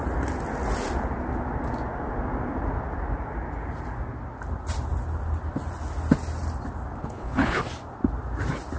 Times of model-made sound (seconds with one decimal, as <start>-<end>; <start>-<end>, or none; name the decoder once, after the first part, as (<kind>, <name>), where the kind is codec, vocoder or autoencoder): 7.0-7.6 (codec, HILCodec)